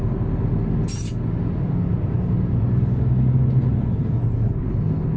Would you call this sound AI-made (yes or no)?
no